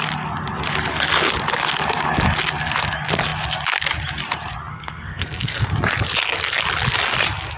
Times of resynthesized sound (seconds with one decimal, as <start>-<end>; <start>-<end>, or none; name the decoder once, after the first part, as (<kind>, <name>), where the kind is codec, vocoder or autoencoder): 4.7-5.7 (codec, SNAC)

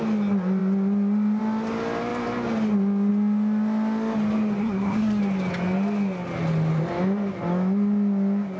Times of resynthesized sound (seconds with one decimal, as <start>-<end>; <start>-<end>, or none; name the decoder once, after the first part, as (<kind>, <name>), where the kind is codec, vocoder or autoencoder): 4.6-5.2 (codec, SNAC)

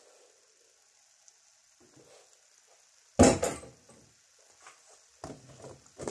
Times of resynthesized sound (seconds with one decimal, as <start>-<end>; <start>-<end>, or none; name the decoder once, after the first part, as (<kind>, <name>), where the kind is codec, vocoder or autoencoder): none

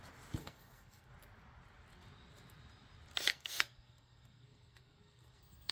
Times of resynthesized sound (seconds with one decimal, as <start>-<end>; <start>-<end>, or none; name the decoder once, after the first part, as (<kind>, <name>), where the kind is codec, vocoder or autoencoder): 0.4-1.1 (codec, SNAC); 3.3-5.7

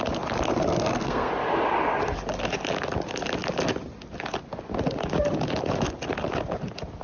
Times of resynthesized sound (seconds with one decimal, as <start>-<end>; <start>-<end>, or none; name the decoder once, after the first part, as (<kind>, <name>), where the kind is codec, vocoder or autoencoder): 0.5-1.3 (codec, SNAC)

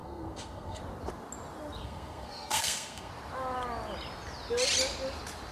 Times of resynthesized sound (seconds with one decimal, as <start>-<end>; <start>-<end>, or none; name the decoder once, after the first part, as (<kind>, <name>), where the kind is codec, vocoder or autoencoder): 0.0-0.8 (codec, SNAC); 1.8-3.1

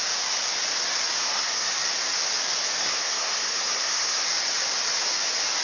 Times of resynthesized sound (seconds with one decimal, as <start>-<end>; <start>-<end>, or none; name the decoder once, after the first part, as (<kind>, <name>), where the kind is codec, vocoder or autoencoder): 1.2-1.7 (codec, SNAC); 2.8-4.2